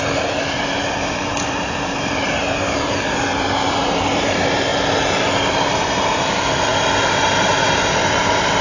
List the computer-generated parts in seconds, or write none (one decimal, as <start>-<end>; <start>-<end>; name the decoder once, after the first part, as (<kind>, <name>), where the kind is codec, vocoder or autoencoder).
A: 0.0-4.7 (vocoder, BigVGAN v2); 5.5-6.7; 8.1-8.6